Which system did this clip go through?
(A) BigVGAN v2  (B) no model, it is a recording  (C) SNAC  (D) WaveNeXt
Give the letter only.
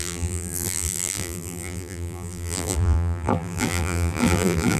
A